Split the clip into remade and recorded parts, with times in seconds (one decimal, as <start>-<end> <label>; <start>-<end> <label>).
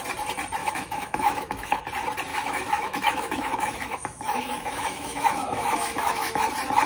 0.0-0.6 recorded; 0.6-1.8 remade; 1.8-2.3 recorded; 2.3-6.4 remade; 6.4-6.9 recorded